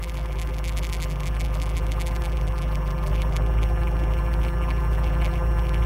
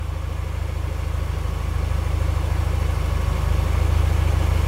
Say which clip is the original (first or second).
second